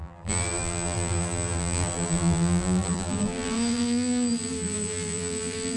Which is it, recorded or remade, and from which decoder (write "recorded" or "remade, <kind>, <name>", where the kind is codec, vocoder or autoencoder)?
remade, vocoder, BigVGAN v2